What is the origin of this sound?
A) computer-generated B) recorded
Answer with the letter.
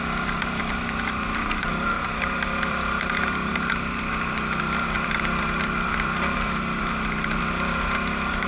A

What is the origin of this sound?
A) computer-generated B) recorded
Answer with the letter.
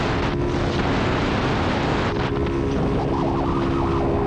B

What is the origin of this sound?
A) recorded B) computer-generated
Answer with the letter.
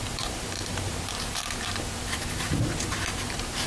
B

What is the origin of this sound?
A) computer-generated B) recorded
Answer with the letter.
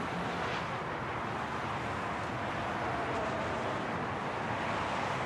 B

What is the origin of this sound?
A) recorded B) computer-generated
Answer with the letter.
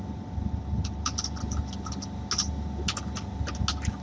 A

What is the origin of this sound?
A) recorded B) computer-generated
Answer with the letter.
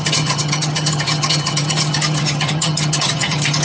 B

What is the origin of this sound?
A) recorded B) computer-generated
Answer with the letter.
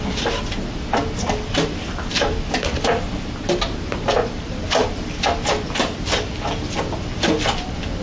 A